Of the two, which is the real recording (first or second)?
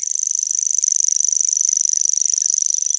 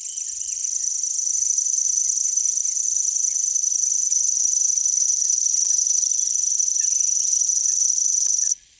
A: first